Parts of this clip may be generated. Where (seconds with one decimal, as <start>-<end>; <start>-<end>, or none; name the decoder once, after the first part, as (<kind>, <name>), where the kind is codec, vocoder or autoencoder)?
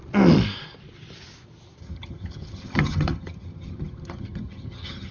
1.8-5.1 (vocoder, HiFi-GAN)